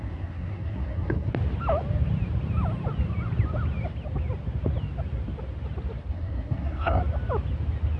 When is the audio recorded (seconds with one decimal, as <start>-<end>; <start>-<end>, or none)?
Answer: 1.3-6.1; 7.0-8.0